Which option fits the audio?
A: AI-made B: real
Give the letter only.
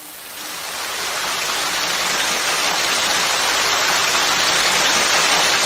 B